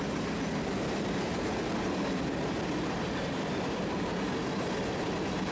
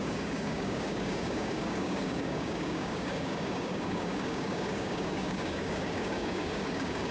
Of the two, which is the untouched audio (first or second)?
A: first